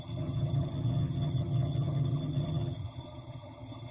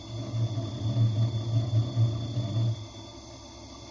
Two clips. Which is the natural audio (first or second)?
second